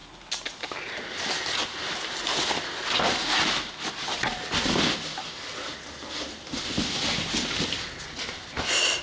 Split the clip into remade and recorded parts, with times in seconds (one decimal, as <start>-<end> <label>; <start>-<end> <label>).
0.0-9.0 recorded